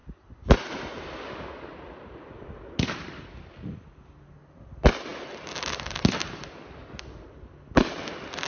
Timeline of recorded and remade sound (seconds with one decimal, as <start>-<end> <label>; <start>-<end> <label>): 0.0-8.5 recorded